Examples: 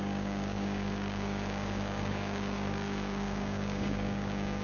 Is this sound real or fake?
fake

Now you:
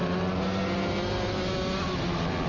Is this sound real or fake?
real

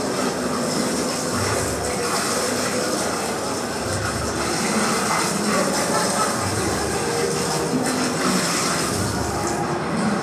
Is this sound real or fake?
real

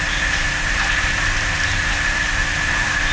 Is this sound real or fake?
real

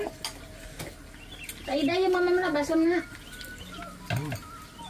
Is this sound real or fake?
real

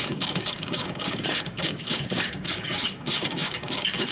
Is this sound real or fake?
fake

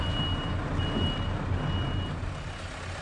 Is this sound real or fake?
real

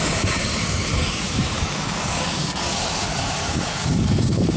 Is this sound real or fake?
fake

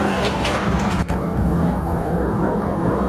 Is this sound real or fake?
fake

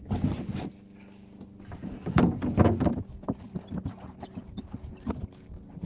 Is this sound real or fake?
real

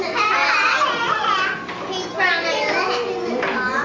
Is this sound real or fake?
real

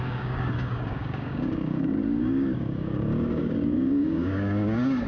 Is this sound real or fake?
fake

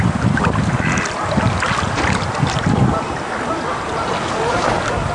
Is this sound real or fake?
real